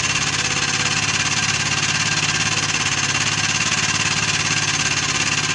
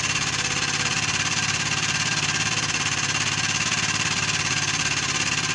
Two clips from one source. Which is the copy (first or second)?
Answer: second